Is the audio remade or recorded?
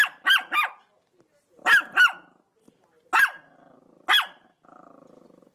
recorded